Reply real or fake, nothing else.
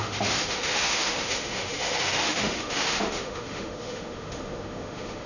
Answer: fake